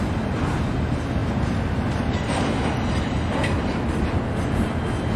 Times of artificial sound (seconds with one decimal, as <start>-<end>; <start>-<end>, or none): none